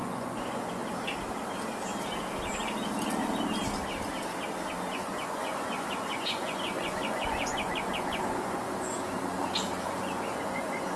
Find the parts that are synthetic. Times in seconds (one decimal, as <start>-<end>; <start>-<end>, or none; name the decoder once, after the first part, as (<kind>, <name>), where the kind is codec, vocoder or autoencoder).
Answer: 0.0-0.8 (vocoder, Vocos); 4.9-11.0